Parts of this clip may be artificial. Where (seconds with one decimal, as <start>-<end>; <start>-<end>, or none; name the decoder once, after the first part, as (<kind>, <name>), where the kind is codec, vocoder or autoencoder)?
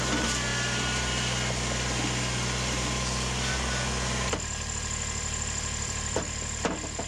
0.0-0.5 (vocoder, BigVGAN v2); 4.4-7.1